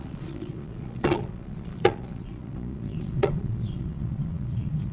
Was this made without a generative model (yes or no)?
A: no